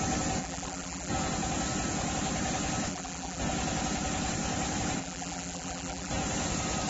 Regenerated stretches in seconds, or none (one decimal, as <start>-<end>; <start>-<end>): 0.4-1.1; 2.9-3.4; 5.0-6.1